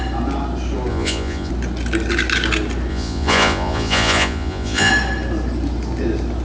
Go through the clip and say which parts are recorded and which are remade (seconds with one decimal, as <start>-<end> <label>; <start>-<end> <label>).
0.0-0.9 recorded; 0.9-1.5 remade; 1.5-2.9 recorded; 2.9-4.9 remade; 4.9-6.4 recorded

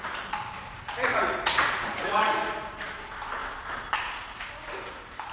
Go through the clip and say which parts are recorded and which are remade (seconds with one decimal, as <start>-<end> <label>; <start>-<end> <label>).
0.0-1.1 recorded; 1.1-2.7 remade; 2.7-5.3 recorded

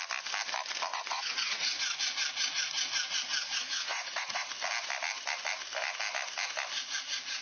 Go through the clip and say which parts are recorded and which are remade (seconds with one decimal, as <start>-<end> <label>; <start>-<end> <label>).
0.0-0.9 recorded; 0.9-2.0 remade; 2.0-3.4 recorded; 3.4-4.5 remade; 4.5-7.4 recorded

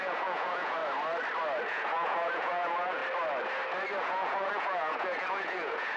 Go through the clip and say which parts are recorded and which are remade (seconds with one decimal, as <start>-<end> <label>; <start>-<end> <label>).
0.0-0.8 remade; 0.8-1.7 recorded; 1.7-3.0 remade; 3.0-4.0 recorded; 4.0-6.0 remade

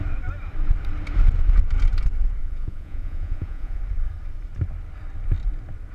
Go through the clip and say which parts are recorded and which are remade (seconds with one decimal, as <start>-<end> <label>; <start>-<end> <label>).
0.0-2.4 recorded; 2.4-3.8 remade; 3.8-5.9 recorded